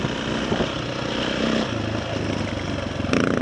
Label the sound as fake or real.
real